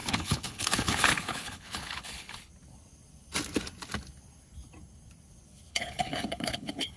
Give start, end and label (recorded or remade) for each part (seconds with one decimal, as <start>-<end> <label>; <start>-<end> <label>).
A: 0.0-2.5 remade; 2.5-5.7 recorded; 5.7-7.0 remade

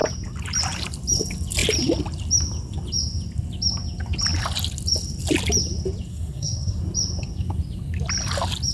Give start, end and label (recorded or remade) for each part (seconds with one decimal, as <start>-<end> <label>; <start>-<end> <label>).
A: 0.0-6.1 recorded; 6.1-6.8 remade; 6.8-8.7 recorded

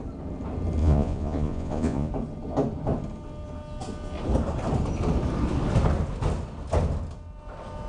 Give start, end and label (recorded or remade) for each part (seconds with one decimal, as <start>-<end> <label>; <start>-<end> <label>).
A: 0.0-0.8 recorded; 0.8-2.1 remade; 2.1-7.9 recorded

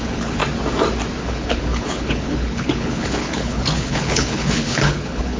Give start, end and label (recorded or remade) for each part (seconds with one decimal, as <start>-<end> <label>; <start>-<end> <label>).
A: 0.0-0.4 remade; 0.4-1.2 recorded; 1.2-5.4 remade